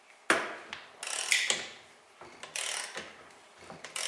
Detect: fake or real real